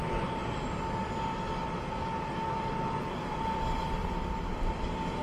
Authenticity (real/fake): real